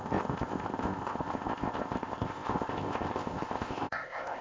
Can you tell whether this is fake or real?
fake